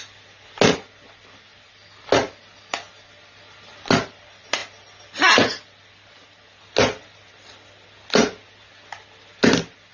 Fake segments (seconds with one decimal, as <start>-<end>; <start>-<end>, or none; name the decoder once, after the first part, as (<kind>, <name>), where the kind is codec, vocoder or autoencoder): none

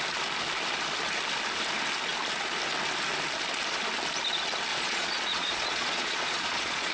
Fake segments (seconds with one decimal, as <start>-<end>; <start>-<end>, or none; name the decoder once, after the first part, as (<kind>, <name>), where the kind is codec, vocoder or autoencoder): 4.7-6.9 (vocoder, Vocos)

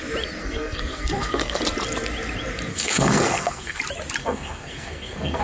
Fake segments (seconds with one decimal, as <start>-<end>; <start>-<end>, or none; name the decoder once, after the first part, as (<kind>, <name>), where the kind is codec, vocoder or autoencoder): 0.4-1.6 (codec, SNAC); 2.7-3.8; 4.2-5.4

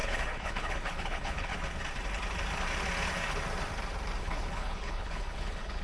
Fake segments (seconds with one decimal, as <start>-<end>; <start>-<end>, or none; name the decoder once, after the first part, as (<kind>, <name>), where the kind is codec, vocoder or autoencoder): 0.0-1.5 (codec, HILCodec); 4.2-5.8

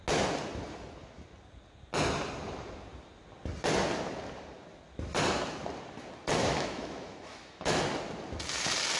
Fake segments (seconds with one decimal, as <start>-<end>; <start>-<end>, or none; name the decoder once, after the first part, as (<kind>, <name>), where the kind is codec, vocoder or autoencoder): 6.4-7.8 (autoencoder, DAC-VAE)

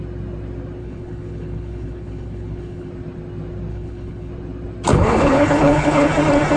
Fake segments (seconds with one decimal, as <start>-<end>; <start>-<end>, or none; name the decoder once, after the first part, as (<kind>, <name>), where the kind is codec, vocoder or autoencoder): 0.8-2.9 (codec, HILCodec); 3.7-4.3; 4.9-6.1

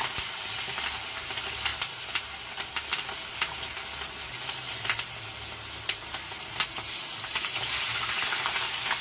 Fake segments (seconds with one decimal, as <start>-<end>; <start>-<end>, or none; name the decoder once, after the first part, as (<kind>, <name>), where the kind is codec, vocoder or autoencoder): none